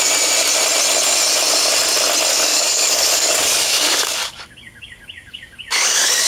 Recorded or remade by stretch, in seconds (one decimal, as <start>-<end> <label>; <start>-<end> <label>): 0.0-2.3 recorded; 2.3-6.3 remade